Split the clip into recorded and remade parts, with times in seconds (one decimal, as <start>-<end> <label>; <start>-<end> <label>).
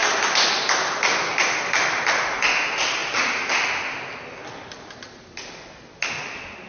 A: 0.0-6.7 recorded